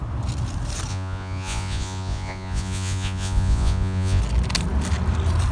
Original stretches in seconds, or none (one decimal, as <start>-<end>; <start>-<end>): 0.0-0.9; 4.2-5.5